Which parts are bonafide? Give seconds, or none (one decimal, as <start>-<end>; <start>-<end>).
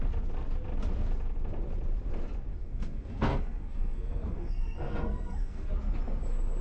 0.0-2.5; 5.7-6.6